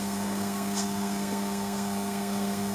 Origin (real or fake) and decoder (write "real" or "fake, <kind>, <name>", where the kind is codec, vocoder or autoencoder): fake, codec, SNAC